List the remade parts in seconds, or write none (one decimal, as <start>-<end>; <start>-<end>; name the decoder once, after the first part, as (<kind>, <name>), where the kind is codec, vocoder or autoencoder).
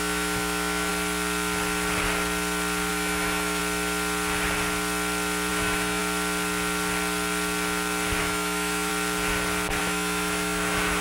0.0-0.9 (autoencoder, DAC-VAE); 2.9-3.6; 5.5-6.0; 8.2-8.9; 9.8-11.0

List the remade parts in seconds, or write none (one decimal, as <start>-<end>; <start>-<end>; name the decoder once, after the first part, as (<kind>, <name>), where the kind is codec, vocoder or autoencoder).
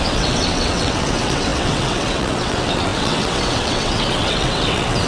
0.0-5.1 (vocoder, WaveNeXt)